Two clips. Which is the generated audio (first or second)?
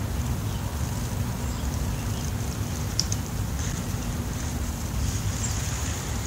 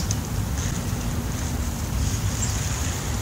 first